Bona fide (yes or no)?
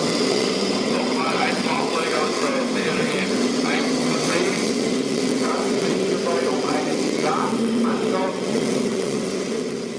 no